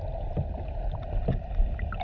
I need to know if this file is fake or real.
real